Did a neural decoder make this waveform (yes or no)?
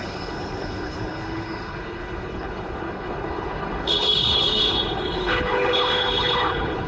yes